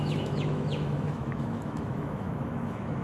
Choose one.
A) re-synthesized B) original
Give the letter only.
A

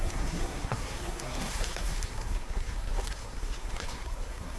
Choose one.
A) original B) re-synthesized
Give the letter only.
B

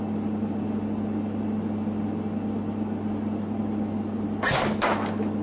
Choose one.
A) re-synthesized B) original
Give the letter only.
B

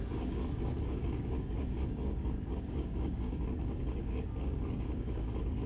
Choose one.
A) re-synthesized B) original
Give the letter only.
A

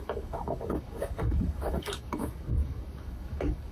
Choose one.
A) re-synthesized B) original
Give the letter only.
A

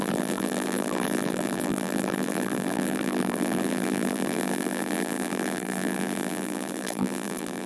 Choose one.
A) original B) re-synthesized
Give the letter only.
B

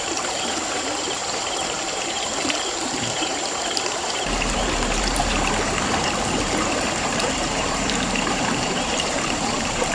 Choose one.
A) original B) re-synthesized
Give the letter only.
B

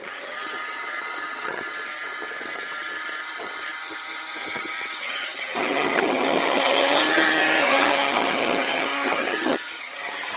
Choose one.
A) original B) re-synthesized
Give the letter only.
B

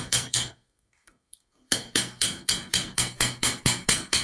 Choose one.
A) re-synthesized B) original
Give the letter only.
A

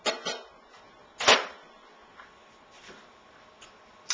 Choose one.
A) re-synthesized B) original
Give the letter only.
B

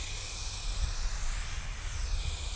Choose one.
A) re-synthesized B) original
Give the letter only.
B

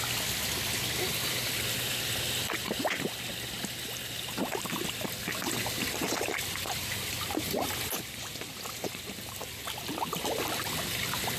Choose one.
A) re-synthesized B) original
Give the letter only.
B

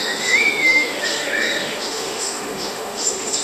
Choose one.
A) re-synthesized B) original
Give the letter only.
A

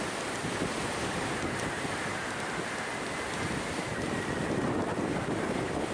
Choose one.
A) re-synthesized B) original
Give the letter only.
B